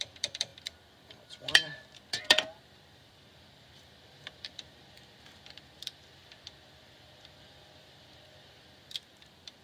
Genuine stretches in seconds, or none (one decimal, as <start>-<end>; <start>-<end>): none